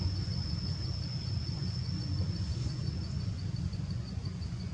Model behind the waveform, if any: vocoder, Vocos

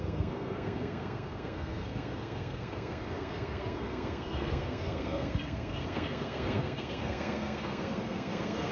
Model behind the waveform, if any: codec, SNAC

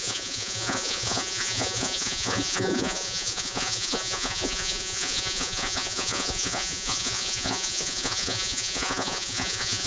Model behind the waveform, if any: vocoder, Vocos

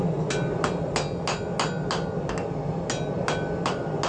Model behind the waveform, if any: none